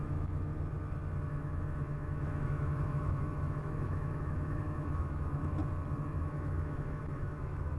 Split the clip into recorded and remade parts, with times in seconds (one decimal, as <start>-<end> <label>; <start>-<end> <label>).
0.0-0.5 remade; 0.5-1.2 recorded; 1.2-5.6 remade; 5.6-6.2 recorded; 6.2-7.8 remade